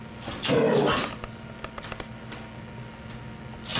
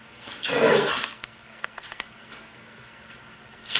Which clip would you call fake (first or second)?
second